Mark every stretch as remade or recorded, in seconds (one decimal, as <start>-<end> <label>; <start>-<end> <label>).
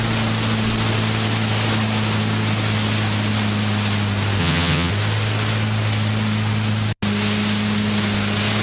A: 0.0-4.4 recorded; 4.4-4.9 remade; 4.9-8.6 recorded